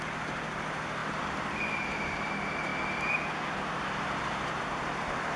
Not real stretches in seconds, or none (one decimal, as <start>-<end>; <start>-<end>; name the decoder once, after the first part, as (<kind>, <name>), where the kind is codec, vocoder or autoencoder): none